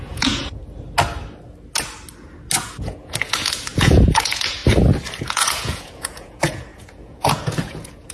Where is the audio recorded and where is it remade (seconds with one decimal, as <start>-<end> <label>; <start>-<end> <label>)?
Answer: 0.0-0.6 remade; 0.6-2.6 recorded; 2.6-4.6 remade; 4.6-5.2 recorded; 5.2-8.1 remade